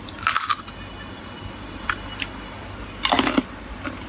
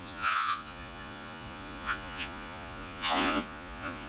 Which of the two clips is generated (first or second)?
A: second